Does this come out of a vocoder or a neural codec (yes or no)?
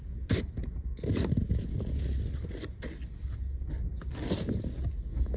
no